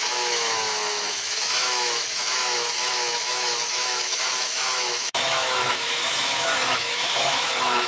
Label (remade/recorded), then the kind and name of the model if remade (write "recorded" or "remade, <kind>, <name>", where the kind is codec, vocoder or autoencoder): remade, autoencoder, DAC-VAE